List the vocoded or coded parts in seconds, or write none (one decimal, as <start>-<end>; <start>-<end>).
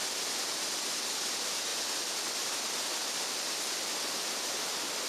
none